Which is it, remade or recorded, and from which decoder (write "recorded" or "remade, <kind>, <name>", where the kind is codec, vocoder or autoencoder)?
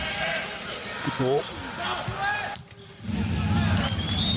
recorded